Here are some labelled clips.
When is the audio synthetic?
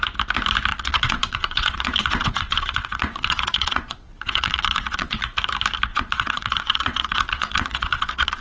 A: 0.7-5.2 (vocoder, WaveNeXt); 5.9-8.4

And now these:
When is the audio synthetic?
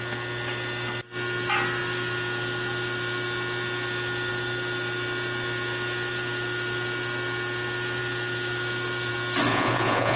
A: 9.5-10.2 (vocoder, Vocos)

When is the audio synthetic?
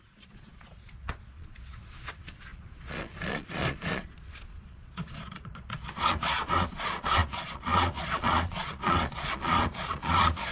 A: 0.0-10.5 (vocoder, Vocos)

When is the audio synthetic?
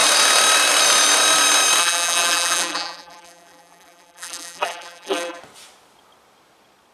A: 1.8-5.4 (vocoder, BigVGAN v2)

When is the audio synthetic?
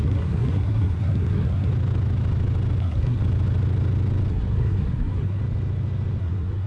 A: 0.0-1.7 (codec, SNAC); 2.8-3.2; 4.3-5.4; 6.2-6.7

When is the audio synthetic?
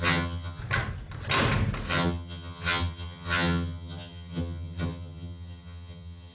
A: 0.0-0.6 (vocoder, HiFi-GAN); 1.9-6.3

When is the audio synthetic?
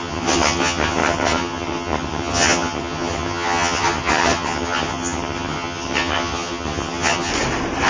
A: 0.0-7.3 (vocoder, HiFi-GAN)